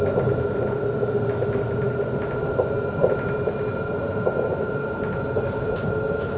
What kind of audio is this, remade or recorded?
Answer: recorded